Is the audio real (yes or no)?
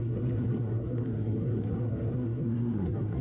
no